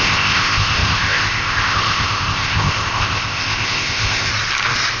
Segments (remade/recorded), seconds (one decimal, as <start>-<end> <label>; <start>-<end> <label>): 0.0-4.3 remade; 4.3-5.0 recorded